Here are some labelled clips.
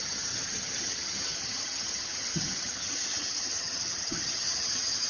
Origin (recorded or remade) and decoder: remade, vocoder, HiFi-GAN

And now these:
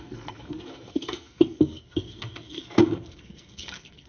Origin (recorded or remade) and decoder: remade, codec, SNAC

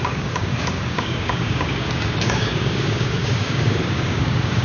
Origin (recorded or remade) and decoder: remade, codec, DAC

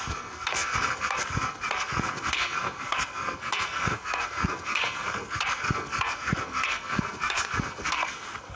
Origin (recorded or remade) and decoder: remade, codec, SNAC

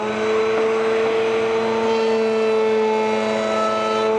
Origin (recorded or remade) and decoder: recorded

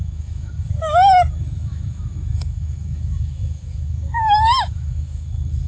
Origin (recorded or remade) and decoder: remade, autoencoder, DAC-VAE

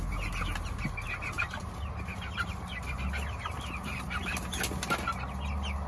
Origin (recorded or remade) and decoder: recorded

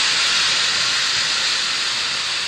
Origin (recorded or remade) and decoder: recorded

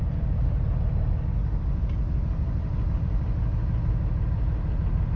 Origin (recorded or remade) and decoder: recorded